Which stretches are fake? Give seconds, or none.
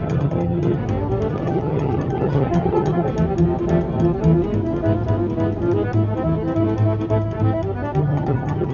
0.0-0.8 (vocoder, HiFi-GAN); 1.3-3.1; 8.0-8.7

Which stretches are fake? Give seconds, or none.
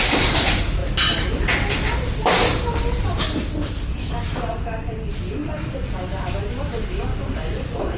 none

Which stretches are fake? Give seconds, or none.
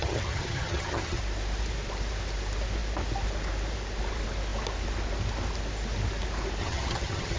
0.0-1.2 (vocoder, HiFi-GAN); 6.6-7.4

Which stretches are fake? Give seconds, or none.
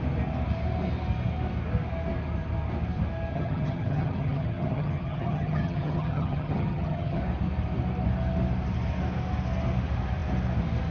3.3-7.2 (vocoder, HiFi-GAN)